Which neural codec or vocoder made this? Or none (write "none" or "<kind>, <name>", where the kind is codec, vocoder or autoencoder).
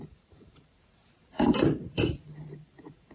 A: vocoder, BigVGAN v2